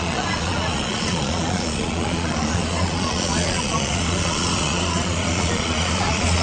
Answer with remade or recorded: remade